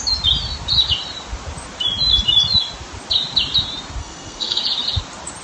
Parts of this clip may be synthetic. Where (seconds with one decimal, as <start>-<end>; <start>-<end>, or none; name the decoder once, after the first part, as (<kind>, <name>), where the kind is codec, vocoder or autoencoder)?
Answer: 4.0-4.6 (codec, SNAC)